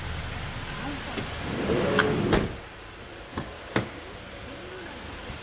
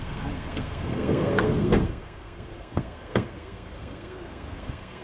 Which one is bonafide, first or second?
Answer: first